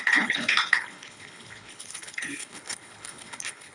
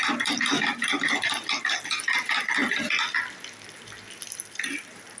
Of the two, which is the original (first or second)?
second